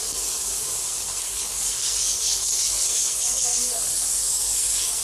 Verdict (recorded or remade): remade